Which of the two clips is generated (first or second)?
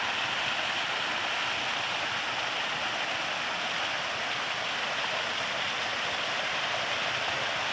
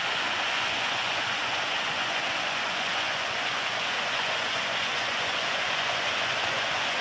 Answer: second